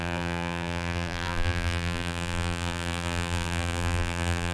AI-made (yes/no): yes